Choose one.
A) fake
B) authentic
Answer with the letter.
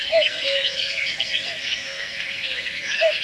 A